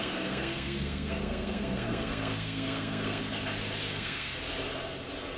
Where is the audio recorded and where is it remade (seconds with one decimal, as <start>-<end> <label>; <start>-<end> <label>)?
0.0-3.2 remade; 3.2-3.9 recorded; 3.9-4.4 remade; 4.4-5.4 recorded